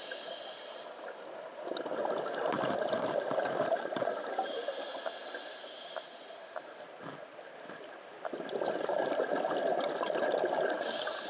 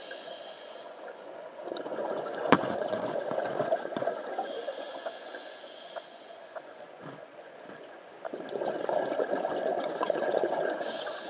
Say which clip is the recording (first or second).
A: first